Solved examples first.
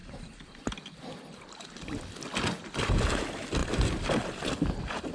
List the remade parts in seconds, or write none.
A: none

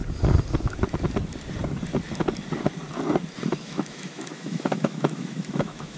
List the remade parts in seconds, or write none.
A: 3.6-6.0

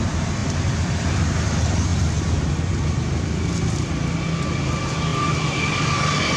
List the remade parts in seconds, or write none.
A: 0.4-1.5; 5.1-6.0

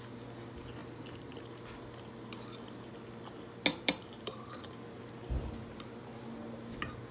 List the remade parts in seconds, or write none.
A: 0.8-1.4; 3.7-4.7

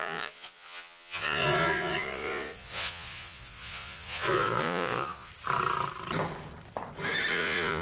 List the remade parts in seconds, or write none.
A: 0.0-5.3; 7.3-7.8

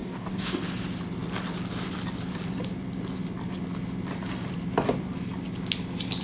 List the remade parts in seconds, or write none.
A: 0.0-0.6

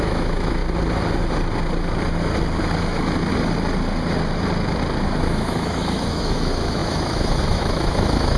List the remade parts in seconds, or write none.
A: 0.0-0.6; 5.2-8.4